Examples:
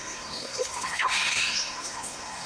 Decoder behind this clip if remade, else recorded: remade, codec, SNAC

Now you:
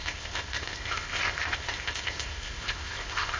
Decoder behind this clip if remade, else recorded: remade, codec, ZipCodec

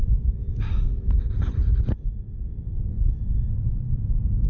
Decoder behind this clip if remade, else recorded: recorded